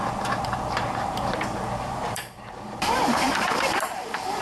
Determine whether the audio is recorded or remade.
remade